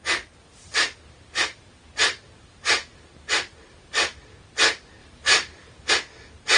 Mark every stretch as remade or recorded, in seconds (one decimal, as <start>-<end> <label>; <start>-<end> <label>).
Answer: 0.0-0.5 recorded; 0.5-4.2 remade; 4.2-5.0 recorded; 5.0-5.9 remade; 5.9-6.6 recorded